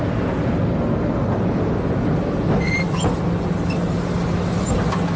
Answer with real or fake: real